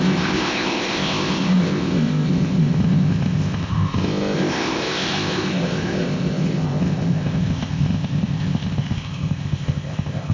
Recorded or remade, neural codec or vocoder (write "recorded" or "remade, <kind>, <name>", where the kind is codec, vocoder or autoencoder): remade, codec, ZipCodec